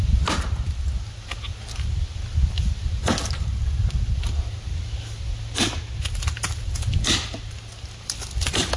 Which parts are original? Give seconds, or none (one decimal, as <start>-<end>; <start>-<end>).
0.0-8.8